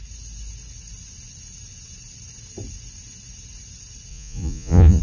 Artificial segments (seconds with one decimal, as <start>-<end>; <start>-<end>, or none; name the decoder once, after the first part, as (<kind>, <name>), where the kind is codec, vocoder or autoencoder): 4.1-5.0 (vocoder, Vocos)